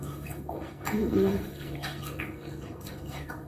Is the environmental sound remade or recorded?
remade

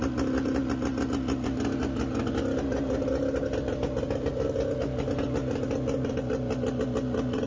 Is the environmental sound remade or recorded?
recorded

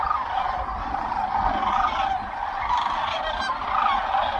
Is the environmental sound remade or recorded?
remade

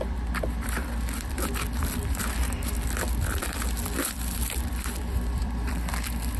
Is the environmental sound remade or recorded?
remade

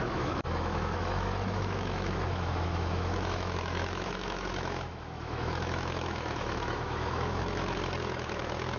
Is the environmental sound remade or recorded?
remade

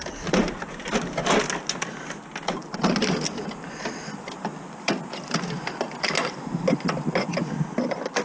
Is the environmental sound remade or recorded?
recorded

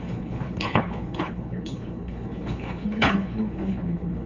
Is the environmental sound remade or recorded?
remade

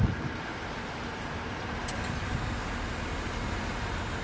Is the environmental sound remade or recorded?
recorded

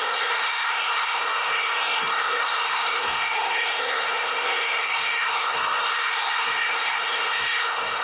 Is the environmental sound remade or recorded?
remade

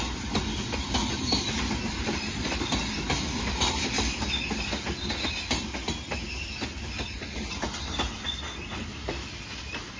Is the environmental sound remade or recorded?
recorded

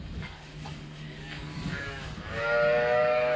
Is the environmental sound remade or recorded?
remade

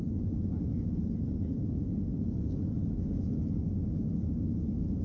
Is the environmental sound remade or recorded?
recorded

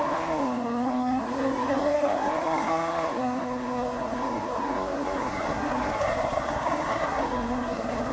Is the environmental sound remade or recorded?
remade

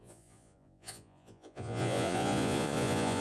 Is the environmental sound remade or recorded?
remade